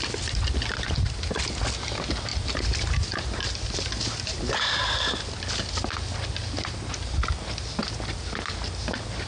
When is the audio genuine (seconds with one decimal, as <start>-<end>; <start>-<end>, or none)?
0.0-9.3